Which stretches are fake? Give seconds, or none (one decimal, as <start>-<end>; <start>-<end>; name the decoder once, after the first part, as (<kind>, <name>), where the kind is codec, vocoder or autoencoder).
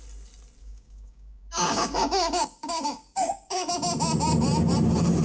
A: 0.6-3.7 (codec, DAC)